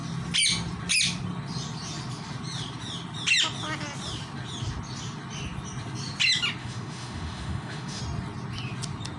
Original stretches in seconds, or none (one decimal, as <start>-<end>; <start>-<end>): 0.0-6.6; 8.0-9.2